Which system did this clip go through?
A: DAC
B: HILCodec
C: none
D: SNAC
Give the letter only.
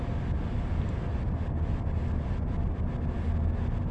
C